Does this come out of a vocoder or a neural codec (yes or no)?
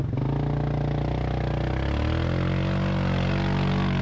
no